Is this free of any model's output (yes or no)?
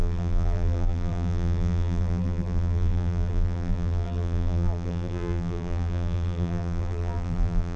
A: no